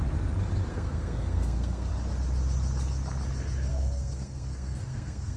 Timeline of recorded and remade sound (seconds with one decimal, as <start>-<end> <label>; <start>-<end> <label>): 0.0-0.7 recorded; 0.7-1.9 remade; 1.9-3.7 recorded; 3.7-5.4 remade